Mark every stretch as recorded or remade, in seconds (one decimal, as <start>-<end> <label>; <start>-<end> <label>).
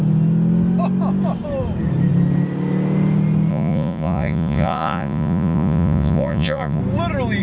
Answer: 0.0-3.5 recorded; 3.5-6.8 remade; 6.8-7.4 recorded